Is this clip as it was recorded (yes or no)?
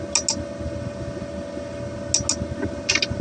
yes